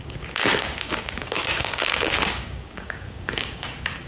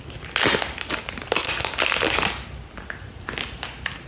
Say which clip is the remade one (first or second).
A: first